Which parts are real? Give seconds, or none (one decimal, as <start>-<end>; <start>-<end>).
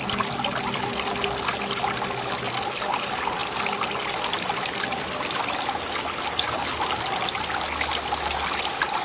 0.0-9.0